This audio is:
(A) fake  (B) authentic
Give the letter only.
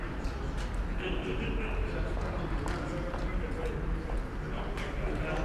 B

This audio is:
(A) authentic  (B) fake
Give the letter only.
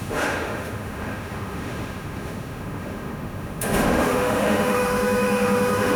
B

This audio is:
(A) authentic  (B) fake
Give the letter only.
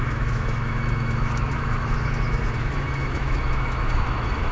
B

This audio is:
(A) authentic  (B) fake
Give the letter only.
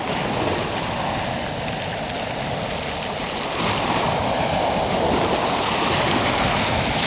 A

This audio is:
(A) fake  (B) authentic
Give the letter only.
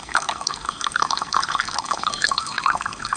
A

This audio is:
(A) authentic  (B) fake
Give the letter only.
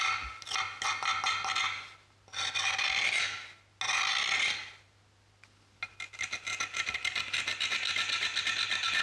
A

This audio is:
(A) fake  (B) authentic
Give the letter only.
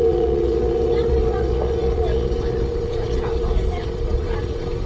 A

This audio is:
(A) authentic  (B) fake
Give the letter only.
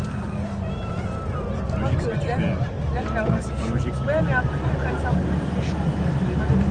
A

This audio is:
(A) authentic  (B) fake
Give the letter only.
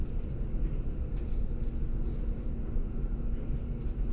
A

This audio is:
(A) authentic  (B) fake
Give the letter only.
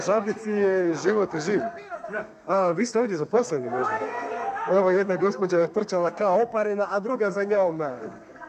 B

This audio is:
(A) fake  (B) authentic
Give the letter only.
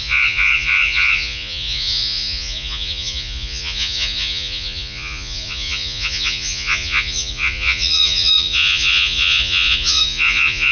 A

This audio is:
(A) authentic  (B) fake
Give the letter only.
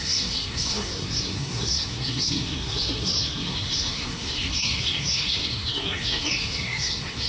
B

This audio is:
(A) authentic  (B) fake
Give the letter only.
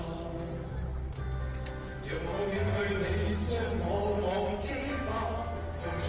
A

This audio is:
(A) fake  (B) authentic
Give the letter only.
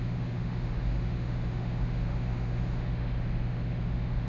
A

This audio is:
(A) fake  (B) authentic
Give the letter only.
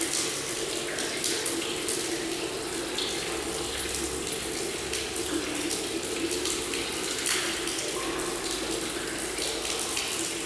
B